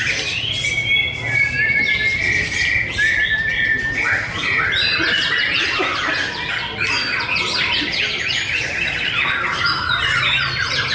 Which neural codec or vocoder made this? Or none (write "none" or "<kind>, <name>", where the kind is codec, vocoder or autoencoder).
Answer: none